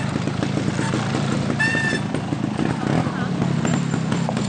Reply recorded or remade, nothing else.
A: recorded